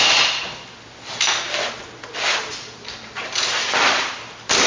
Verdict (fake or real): fake